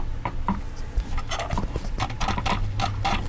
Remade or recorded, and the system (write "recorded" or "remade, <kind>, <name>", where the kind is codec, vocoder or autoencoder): recorded